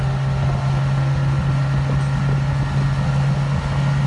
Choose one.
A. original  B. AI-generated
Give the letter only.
A